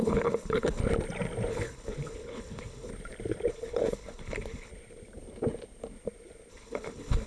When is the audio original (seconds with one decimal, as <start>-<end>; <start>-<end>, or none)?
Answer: 0.8-1.5; 2.9-3.5; 4.7-6.5